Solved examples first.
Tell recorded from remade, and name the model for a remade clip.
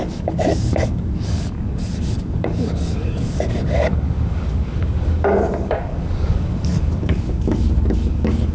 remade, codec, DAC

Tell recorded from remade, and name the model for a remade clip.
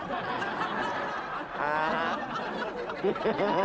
recorded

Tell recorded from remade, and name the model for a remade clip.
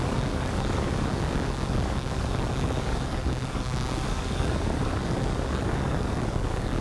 remade, codec, DAC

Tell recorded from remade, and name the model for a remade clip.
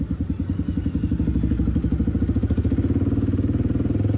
recorded